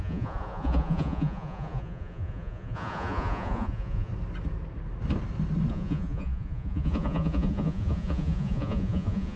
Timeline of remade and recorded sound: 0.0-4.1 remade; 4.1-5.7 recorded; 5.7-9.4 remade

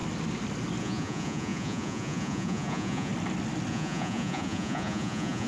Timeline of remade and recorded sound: 0.0-0.8 recorded; 0.8-3.1 remade; 3.1-3.7 recorded; 3.7-5.5 remade

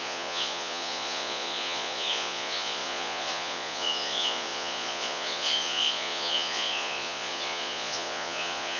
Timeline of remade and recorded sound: 0.0-8.8 remade

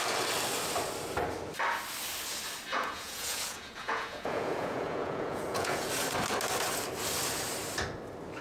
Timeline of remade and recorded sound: 0.0-2.7 recorded; 2.7-5.9 remade; 5.9-8.4 recorded

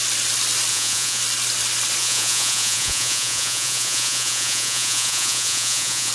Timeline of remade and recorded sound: 0.0-0.7 recorded; 0.7-1.2 remade; 1.2-2.0 recorded; 2.0-6.1 remade

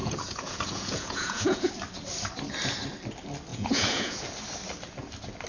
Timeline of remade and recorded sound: 0.0-1.7 remade; 1.7-3.5 recorded; 3.5-4.2 remade; 4.2-5.5 recorded

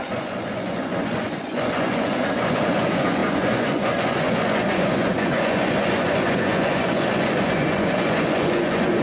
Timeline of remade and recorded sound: 0.0-9.0 remade